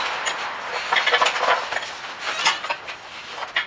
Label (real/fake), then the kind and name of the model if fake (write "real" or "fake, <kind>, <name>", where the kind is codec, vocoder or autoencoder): real